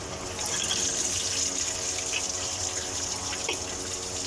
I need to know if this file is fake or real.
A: real